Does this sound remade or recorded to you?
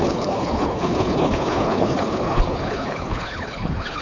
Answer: remade